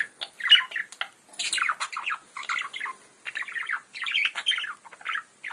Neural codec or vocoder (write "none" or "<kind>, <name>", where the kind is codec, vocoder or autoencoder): none